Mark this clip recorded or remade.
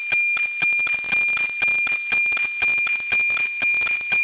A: recorded